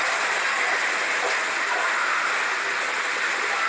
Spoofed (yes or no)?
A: no